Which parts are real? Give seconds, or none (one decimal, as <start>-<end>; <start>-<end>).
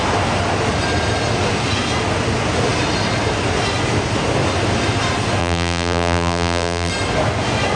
0.0-5.4; 6.9-7.8